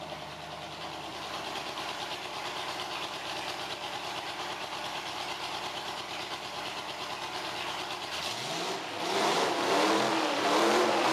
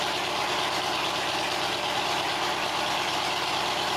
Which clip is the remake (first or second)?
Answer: first